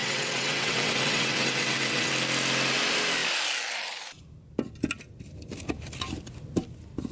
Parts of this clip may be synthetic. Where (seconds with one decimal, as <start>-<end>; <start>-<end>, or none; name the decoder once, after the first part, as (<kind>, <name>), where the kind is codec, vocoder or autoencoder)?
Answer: 0.0-2.1 (vocoder, WaveNeXt)